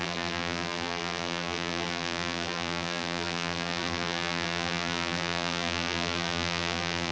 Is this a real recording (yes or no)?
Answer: no